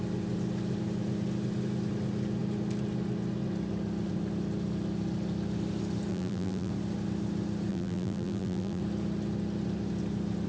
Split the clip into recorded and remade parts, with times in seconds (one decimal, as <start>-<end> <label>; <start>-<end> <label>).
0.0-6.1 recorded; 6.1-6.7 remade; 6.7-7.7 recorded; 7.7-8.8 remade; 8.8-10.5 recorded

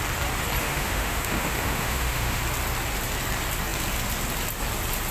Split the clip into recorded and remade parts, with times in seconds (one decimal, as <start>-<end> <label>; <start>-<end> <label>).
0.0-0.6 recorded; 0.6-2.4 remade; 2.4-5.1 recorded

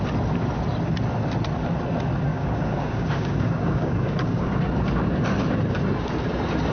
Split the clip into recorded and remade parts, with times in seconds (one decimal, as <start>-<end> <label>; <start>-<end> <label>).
0.0-2.3 recorded; 2.3-4.5 remade; 4.5-6.7 recorded

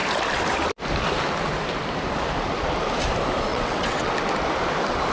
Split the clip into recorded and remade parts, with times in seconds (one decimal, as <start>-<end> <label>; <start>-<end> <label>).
0.0-3.5 recorded; 3.5-4.1 remade; 4.1-5.1 recorded